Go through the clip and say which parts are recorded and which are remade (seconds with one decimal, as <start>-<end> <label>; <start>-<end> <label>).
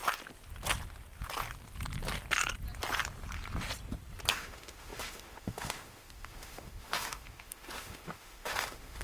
0.0-4.3 recorded; 4.3-9.0 remade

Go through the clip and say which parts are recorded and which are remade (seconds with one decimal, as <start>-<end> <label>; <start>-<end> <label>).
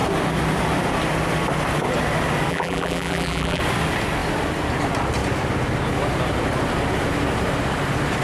0.0-2.5 recorded; 2.5-3.6 remade; 3.6-8.2 recorded